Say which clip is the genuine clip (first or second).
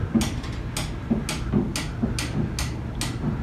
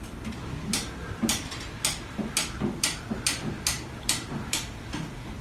first